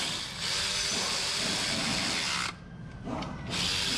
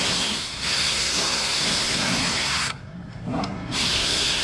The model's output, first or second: second